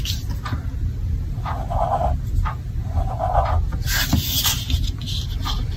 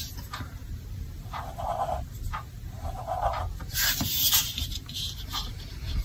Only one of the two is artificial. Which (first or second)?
second